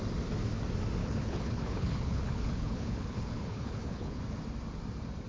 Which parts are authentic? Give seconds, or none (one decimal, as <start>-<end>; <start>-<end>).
0.0-1.0; 4.2-5.3